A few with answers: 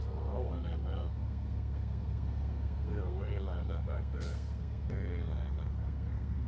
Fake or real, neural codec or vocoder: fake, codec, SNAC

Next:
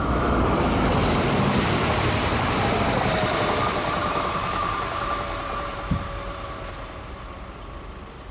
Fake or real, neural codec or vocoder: fake, vocoder, BigVGAN v2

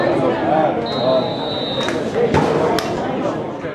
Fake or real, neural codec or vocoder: real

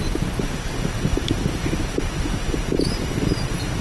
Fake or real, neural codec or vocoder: real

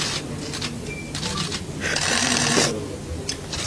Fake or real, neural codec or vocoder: real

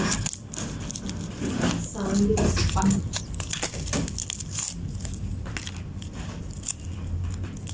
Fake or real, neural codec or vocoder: real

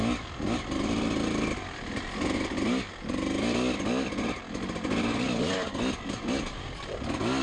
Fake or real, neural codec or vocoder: real